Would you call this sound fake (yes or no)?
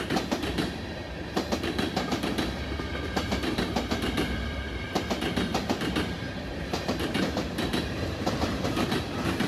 yes